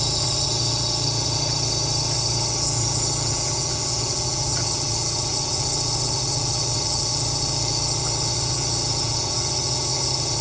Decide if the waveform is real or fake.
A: fake